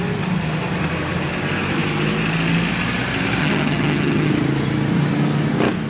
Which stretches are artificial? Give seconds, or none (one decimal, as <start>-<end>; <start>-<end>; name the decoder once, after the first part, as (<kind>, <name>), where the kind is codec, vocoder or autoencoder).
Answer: 3.4-4.3 (vocoder, HiFi-GAN)